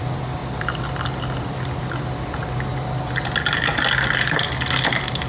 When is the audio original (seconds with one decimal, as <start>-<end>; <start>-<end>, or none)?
0.0-5.3